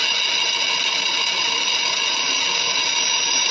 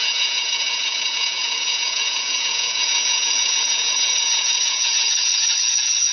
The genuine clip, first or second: first